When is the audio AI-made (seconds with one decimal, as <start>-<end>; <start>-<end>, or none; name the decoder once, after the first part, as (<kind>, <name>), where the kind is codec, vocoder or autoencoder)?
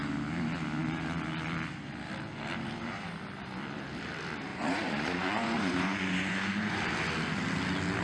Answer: 4.5-6.8 (vocoder, Vocos)